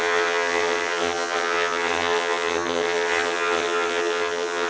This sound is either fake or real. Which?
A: fake